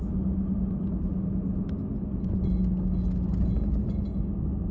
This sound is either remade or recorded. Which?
recorded